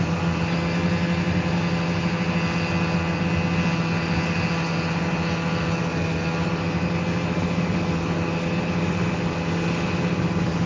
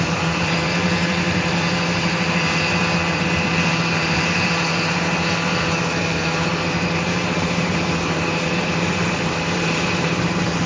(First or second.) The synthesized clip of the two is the second